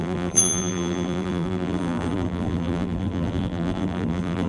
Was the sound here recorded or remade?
remade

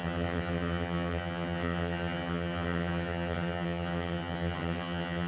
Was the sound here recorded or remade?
remade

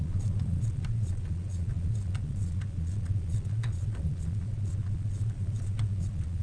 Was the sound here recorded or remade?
remade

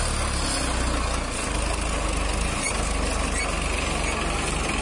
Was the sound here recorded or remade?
recorded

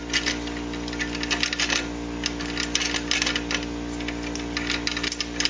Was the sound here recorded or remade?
recorded